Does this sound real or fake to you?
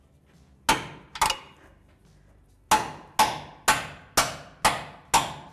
real